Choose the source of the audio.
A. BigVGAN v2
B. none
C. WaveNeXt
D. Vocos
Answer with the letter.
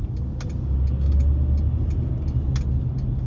B